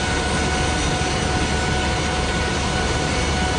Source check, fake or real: real